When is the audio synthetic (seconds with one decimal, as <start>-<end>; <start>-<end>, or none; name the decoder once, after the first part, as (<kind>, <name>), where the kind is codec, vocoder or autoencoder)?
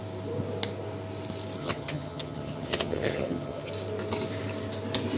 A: 1.6-3.7 (vocoder, HiFi-GAN)